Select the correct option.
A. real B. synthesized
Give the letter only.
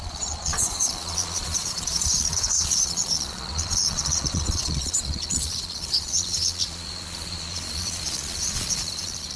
B